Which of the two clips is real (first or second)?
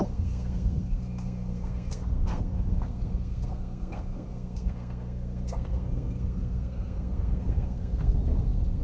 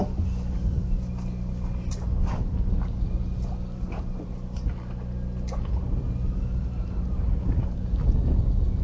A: second